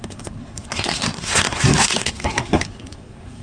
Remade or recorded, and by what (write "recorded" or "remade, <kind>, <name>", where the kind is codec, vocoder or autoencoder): remade, codec, SNAC